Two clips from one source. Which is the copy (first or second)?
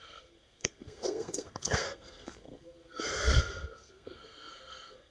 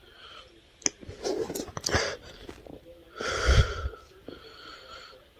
first